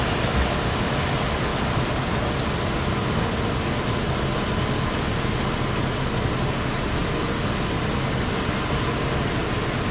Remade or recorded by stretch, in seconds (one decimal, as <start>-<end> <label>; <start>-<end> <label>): 0.0-9.9 recorded